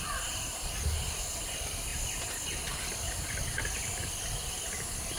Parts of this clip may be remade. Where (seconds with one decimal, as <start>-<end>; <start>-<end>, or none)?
none